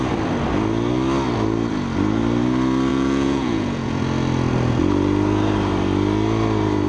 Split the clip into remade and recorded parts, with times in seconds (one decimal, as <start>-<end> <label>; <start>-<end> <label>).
0.0-2.9 recorded; 2.9-4.0 remade; 4.0-6.9 recorded